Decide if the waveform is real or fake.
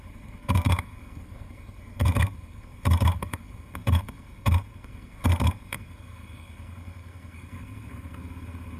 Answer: fake